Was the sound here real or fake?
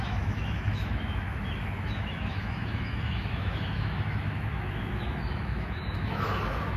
fake